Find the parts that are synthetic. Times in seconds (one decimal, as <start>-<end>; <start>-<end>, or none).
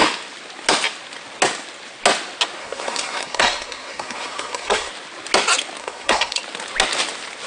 2.6-4.9; 5.8-6.4